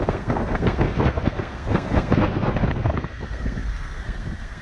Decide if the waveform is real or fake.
fake